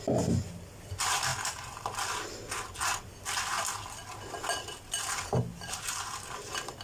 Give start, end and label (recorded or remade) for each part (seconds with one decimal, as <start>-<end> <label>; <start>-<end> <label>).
0.0-6.8 recorded